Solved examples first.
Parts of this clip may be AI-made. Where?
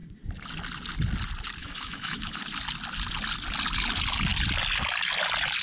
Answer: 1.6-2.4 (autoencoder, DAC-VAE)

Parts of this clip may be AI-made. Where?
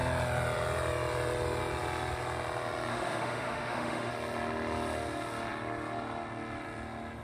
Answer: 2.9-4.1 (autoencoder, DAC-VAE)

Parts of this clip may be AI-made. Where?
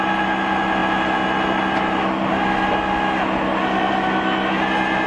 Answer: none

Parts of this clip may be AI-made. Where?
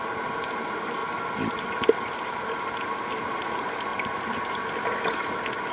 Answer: none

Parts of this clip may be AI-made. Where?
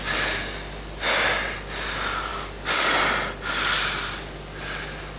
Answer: none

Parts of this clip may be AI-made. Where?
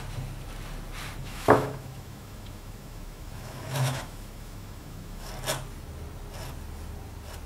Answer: 1.2-5.3 (autoencoder, DAC-VAE)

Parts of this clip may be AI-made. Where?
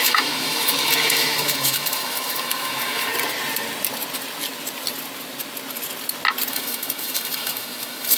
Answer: 0.0-3.1 (autoencoder, DAC-VAE); 6.5-8.2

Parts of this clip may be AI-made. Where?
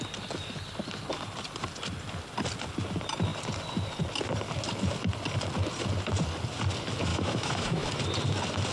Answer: 7.1-7.9 (autoencoder, DAC-VAE)